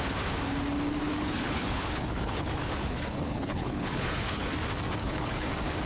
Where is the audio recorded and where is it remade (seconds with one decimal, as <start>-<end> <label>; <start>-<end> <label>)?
0.0-1.0 recorded; 1.0-4.5 remade; 4.5-5.0 recorded; 5.0-5.5 remade; 5.5-5.9 recorded